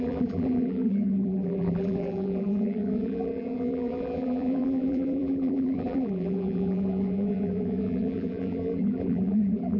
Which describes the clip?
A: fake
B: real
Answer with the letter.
A